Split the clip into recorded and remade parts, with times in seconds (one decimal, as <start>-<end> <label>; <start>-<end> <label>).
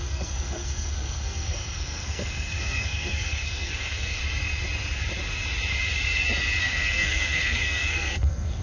0.0-4.2 remade; 4.2-6.6 recorded; 6.6-8.6 remade